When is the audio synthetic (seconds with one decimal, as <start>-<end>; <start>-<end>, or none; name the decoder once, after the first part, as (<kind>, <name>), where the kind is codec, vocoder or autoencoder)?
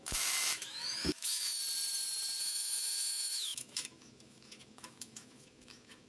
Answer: 0.0-1.6 (autoencoder, DAC-VAE); 2.4-6.1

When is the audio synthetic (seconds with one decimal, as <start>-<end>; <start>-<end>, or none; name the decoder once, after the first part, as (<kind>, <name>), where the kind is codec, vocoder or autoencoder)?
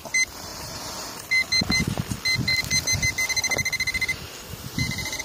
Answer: 0.5-2.0 (vocoder, BigVGAN v2)